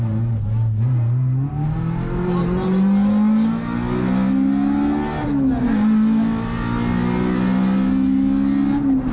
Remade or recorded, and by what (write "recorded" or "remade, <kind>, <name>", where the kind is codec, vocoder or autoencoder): recorded